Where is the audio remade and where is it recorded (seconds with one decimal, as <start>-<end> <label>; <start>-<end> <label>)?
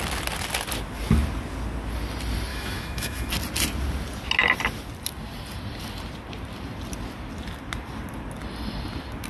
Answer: 0.0-2.5 recorded; 2.5-3.3 remade; 3.3-9.3 recorded